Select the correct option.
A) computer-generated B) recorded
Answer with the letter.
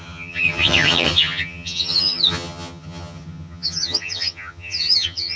A